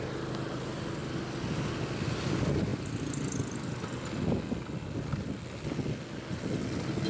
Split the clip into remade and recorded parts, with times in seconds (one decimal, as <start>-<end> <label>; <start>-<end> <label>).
0.0-7.1 recorded